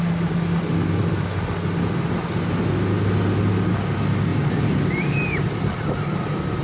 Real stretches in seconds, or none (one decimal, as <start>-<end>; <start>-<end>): 0.0-4.3